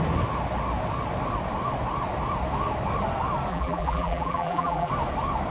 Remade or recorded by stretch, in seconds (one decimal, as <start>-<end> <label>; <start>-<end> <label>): 0.0-3.5 recorded; 3.5-4.9 remade; 4.9-5.5 recorded